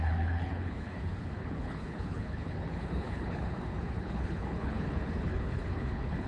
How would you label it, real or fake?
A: fake